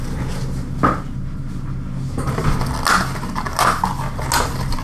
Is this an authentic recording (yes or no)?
yes